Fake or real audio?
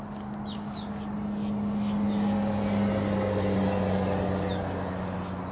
real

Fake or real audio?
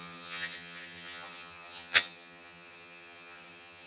fake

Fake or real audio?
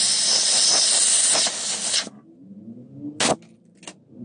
real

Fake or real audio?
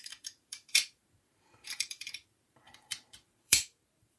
fake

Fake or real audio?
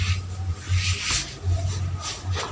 fake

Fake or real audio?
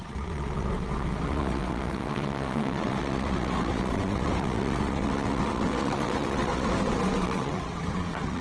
fake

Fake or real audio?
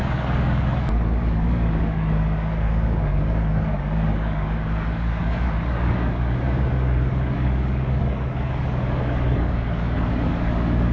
fake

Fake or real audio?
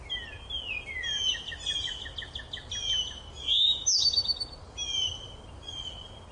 real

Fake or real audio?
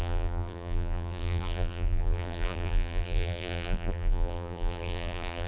fake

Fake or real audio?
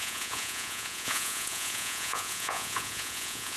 fake